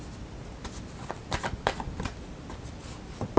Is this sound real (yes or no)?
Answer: yes